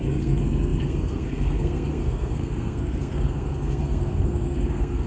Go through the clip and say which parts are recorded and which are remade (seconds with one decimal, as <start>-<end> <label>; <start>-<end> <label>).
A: 0.0-5.1 remade